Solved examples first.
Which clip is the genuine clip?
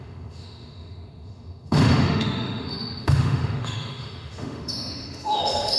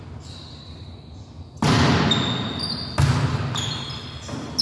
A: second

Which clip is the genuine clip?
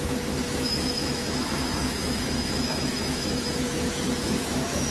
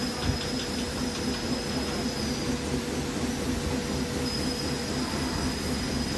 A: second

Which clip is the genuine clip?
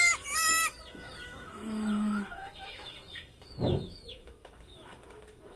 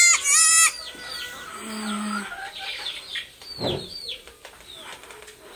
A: second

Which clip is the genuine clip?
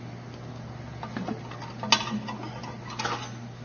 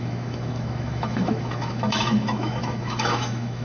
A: first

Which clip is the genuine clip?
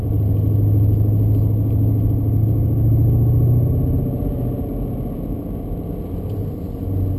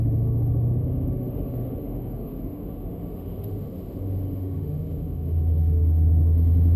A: first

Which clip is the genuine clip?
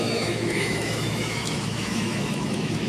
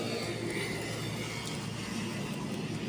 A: second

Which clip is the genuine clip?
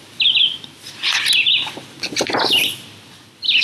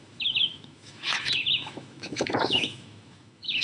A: first